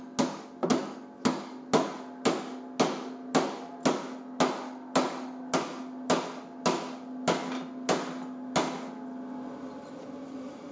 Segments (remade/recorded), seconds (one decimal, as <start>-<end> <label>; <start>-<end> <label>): 0.0-10.7 recorded